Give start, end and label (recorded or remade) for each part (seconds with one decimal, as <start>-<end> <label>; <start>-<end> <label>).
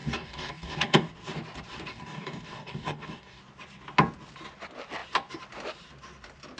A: 0.0-1.1 remade; 1.1-1.9 recorded; 1.9-3.4 remade; 3.4-6.6 recorded